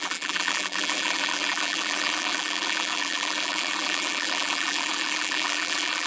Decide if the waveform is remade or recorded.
remade